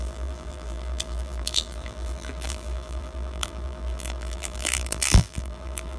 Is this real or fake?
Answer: fake